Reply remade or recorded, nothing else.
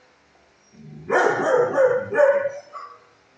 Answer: recorded